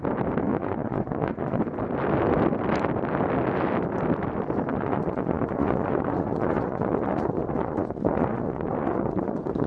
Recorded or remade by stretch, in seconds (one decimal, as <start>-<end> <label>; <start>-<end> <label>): 0.0-0.5 recorded; 0.5-1.6 remade; 1.6-4.7 recorded; 4.7-9.7 remade